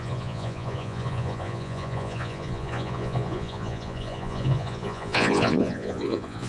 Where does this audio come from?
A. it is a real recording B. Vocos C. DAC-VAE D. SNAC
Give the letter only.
B